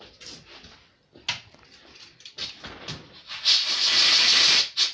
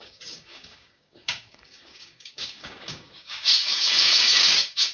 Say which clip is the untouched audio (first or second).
first